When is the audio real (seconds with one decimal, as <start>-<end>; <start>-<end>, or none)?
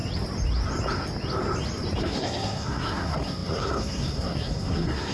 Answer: 0.0-2.0